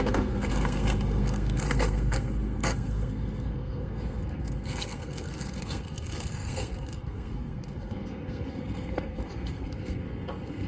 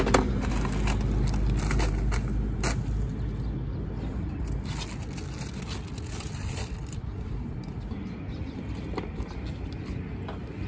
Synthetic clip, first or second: first